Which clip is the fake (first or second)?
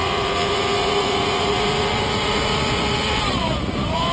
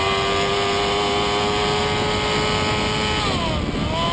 first